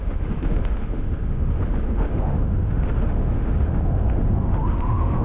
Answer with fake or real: fake